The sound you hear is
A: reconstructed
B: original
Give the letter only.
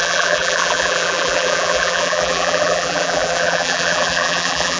A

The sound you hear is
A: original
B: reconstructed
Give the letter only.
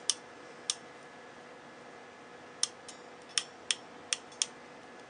A